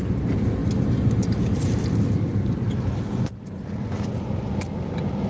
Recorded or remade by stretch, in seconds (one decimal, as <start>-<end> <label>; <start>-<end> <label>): 0.0-5.3 recorded